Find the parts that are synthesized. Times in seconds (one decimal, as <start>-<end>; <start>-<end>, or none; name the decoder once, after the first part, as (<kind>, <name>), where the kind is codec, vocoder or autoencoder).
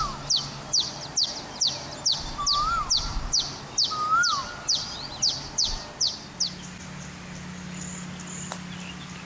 none